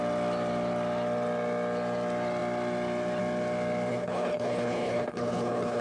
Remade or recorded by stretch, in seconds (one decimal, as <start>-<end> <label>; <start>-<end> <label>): 0.0-3.9 recorded; 3.9-5.8 remade